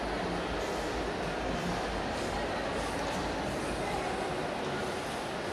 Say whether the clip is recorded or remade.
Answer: recorded